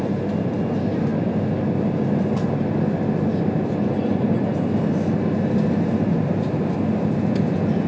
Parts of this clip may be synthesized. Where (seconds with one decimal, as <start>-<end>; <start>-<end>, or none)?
none